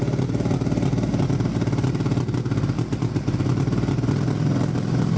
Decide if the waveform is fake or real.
real